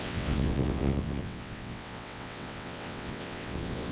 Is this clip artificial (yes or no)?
yes